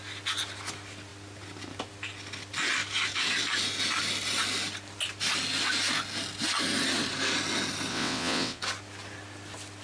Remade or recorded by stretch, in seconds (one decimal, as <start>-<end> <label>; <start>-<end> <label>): 0.0-7.9 recorded; 7.9-8.6 remade; 8.6-9.8 recorded